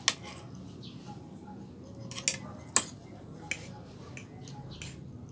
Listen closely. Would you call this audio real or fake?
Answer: real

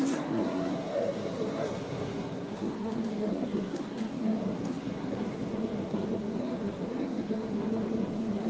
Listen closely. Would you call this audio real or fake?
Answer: fake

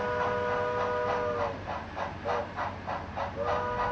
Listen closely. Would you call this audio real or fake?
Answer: real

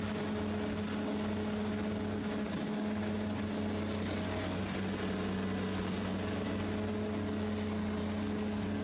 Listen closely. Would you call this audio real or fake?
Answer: real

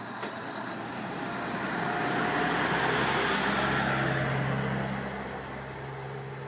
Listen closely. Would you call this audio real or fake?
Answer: real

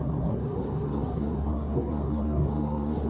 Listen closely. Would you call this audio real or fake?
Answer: fake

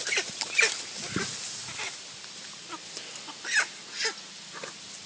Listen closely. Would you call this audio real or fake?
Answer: real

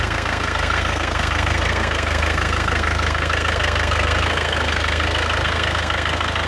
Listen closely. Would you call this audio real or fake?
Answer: fake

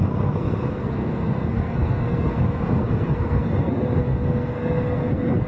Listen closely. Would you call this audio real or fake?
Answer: fake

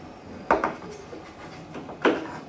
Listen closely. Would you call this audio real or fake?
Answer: real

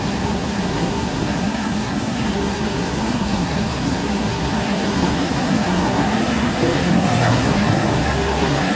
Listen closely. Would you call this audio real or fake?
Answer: fake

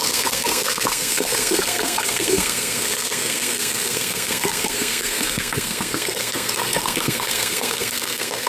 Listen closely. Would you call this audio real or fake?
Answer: fake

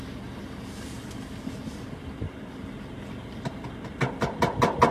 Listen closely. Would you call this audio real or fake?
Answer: real